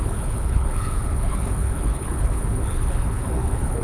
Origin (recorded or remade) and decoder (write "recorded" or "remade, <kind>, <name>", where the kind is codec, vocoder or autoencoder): remade, codec, HILCodec